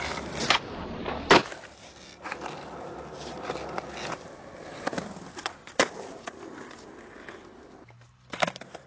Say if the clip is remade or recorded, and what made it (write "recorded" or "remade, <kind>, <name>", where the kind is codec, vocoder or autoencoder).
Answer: recorded